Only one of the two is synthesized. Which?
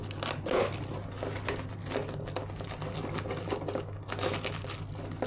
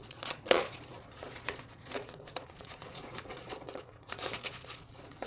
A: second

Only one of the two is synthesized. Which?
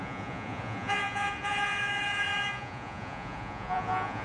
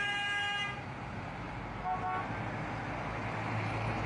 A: first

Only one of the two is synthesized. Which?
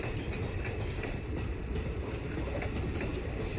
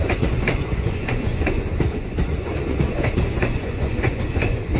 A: second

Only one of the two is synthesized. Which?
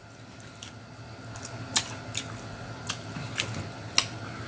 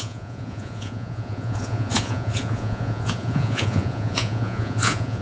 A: second